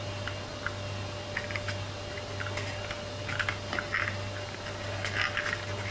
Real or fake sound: real